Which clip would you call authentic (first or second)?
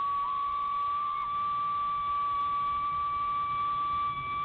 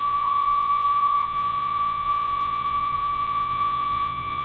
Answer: first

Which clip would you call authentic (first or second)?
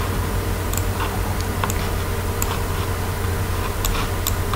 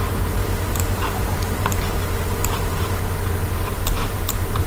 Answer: first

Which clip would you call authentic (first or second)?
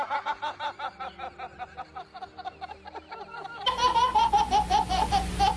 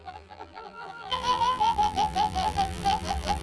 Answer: first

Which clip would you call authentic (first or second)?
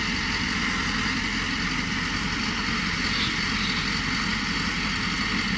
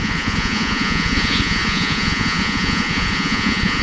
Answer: first